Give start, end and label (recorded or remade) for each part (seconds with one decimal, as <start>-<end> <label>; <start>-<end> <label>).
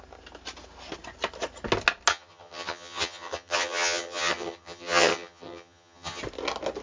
0.0-2.1 recorded; 2.1-6.2 remade; 6.2-6.8 recorded